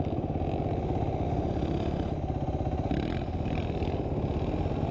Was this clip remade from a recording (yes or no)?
no